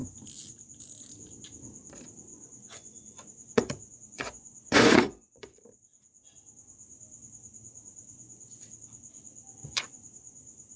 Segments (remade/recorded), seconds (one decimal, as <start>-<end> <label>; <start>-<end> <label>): 0.0-2.3 recorded; 2.3-5.6 remade; 5.6-8.0 recorded; 8.0-8.6 remade; 8.6-9.6 recorded; 9.6-10.8 remade